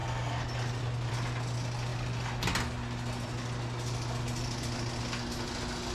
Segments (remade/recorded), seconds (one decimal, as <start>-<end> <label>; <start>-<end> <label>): 0.0-5.9 recorded